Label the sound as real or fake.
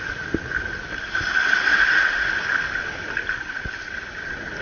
real